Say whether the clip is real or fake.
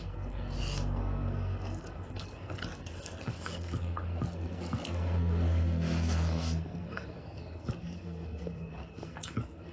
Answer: fake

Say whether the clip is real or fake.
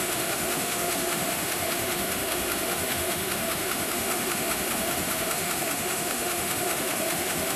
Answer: fake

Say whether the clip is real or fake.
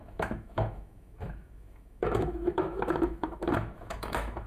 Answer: fake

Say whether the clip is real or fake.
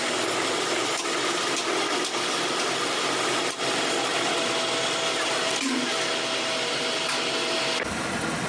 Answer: real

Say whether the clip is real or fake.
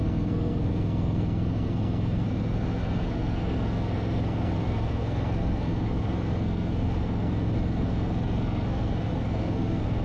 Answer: fake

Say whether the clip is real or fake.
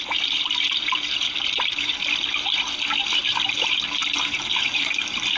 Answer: real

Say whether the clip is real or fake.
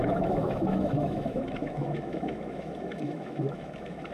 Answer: fake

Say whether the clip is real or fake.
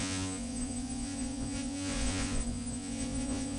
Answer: fake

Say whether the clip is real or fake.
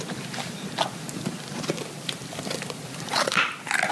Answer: real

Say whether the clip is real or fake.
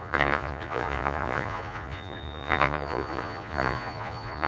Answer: fake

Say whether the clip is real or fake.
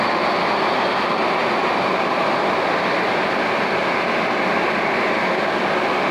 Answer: real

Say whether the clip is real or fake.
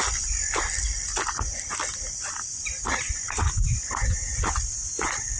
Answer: real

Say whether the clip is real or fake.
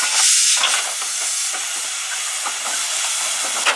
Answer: real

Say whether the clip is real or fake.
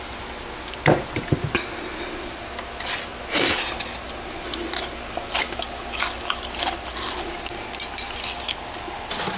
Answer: real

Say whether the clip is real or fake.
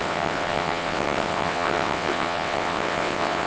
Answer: fake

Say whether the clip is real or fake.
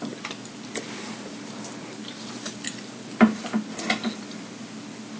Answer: real